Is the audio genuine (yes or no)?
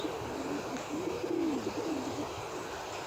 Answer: yes